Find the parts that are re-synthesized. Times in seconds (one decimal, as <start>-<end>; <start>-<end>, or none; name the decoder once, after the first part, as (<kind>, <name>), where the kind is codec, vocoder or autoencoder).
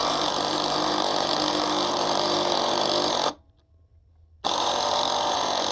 none